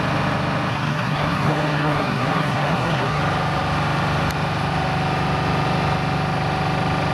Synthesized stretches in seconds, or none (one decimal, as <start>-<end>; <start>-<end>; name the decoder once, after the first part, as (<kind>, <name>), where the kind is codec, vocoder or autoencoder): 0.7-3.2 (codec, SNAC)